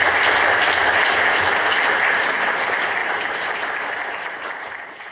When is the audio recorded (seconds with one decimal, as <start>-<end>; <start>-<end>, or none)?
0.0-3.0